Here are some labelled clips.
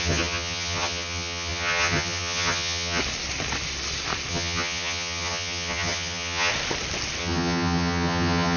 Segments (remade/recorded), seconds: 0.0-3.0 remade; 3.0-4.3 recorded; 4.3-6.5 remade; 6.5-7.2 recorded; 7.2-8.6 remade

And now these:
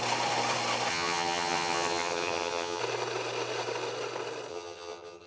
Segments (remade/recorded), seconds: 0.0-0.9 recorded; 0.9-2.8 remade; 2.8-4.5 recorded; 4.5-5.3 remade

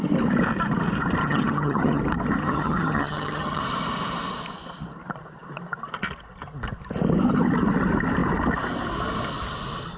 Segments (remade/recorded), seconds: 0.0-1.2 recorded; 1.2-2.0 remade; 2.0-2.4 recorded; 2.4-3.6 remade; 3.6-10.0 recorded

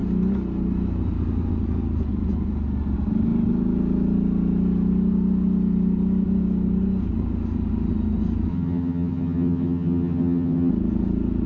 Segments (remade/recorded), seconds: 0.0-8.5 recorded; 8.5-10.7 remade; 10.7-11.5 recorded